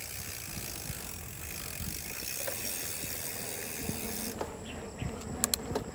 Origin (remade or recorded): recorded